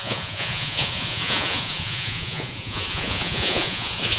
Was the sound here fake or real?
fake